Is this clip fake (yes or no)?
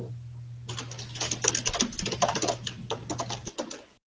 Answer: no